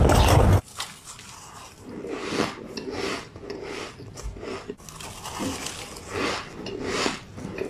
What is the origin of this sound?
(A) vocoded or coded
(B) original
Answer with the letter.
B